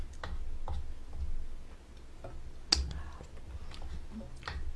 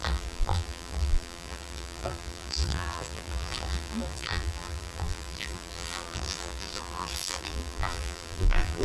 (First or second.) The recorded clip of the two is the first